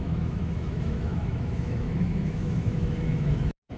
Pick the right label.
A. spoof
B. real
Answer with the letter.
A